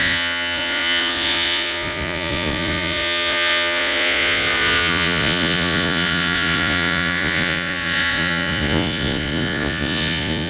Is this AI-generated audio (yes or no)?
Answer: yes